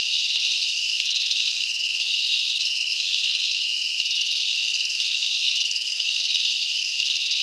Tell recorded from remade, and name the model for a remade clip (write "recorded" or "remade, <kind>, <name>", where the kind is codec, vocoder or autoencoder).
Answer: remade, codec, SNAC